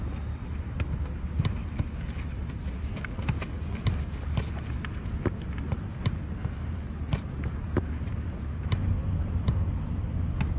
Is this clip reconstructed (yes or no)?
no